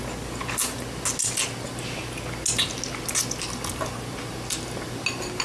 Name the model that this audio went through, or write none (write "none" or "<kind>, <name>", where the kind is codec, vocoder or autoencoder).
none